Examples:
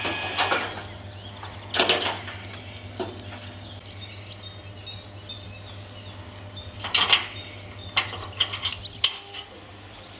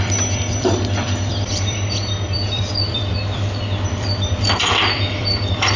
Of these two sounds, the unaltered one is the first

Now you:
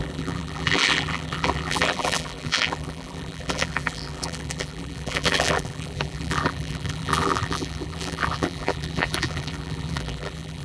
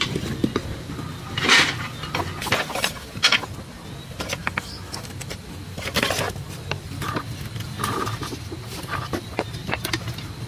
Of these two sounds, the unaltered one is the second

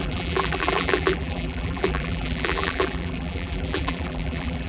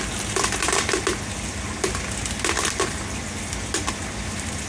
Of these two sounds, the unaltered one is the second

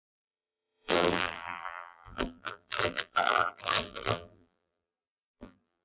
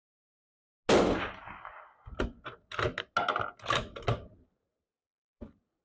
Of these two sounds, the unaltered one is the second